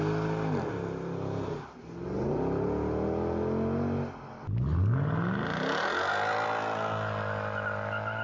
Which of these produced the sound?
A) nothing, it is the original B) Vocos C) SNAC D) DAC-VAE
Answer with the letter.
A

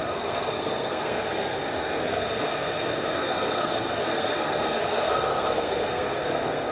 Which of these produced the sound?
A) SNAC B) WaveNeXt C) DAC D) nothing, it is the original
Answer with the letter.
A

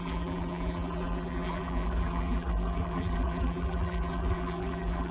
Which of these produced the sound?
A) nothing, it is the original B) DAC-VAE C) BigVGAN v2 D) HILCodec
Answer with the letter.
C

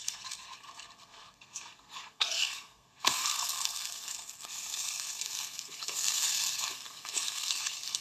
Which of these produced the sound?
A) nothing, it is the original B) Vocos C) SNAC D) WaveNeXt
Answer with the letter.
C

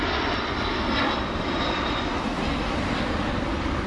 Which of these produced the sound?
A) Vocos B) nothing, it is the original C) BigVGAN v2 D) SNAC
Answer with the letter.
B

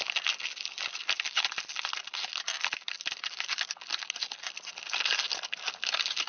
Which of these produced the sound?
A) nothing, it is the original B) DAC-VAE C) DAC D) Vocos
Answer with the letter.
A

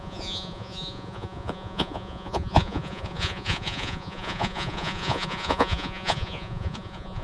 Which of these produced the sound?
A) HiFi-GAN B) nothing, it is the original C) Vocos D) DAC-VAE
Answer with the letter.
C